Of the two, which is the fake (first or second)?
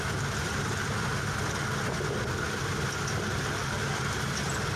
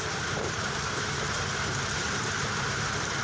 second